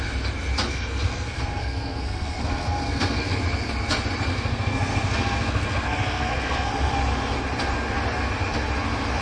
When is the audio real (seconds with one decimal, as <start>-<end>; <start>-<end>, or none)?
0.0-0.7; 3.4-4.3; 6.7-9.2